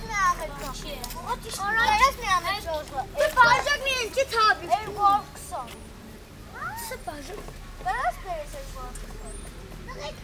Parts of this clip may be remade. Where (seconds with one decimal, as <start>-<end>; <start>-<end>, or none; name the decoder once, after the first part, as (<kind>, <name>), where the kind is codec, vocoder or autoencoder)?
none